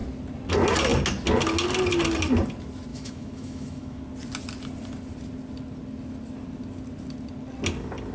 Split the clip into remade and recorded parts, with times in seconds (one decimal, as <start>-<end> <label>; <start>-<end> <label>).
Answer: 0.0-2.9 recorded; 2.9-4.0 remade; 4.0-8.1 recorded